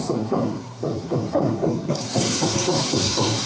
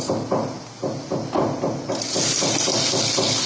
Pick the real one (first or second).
second